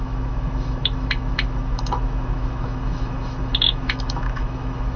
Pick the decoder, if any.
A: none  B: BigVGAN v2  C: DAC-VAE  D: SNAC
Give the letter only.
C